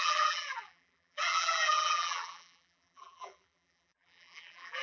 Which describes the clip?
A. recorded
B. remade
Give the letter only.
B